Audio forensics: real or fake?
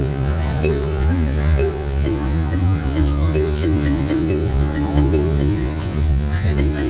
fake